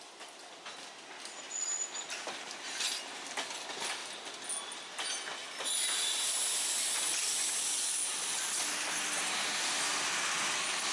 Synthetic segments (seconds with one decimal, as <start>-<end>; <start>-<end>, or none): 5.4-8.4